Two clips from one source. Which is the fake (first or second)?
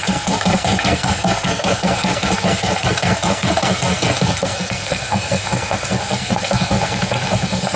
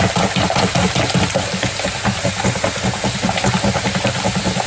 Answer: first